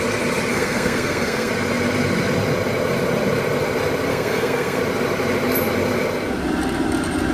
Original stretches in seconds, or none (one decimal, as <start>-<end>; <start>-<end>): 0.0-0.5; 1.5-4.1; 4.8-7.3